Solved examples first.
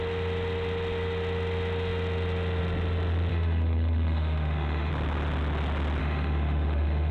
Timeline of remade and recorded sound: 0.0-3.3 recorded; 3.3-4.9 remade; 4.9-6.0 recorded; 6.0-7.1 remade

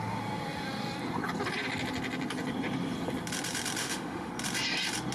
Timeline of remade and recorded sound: 0.0-3.8 recorded; 3.8-4.3 remade; 4.3-5.1 recorded